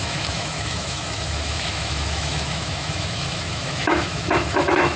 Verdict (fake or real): fake